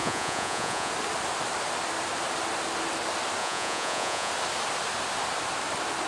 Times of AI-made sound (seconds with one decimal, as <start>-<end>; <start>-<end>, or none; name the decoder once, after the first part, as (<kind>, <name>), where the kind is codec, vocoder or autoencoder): 0.0-0.9 (vocoder, Vocos); 3.4-4.3